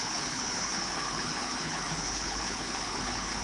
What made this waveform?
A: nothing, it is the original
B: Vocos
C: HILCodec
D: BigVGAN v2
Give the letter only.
C